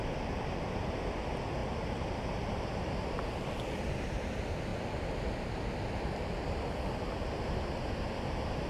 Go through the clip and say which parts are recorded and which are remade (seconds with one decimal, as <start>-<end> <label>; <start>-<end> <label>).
0.0-8.7 recorded